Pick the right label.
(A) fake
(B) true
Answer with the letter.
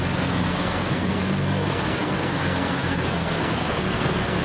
A